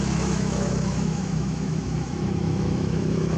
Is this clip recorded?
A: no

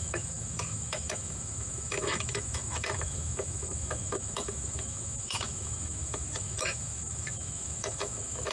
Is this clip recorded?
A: no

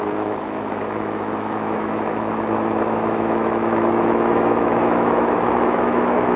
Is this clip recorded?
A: no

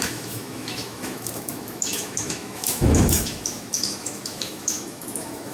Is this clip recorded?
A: no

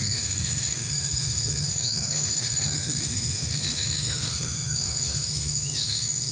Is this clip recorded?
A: no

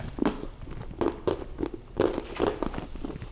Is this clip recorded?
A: yes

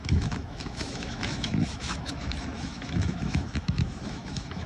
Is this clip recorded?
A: no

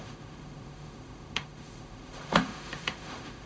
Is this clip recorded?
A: no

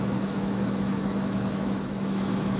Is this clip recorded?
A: no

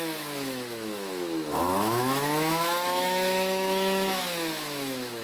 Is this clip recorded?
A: no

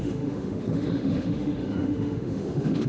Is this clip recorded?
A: no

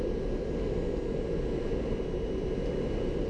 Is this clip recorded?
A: yes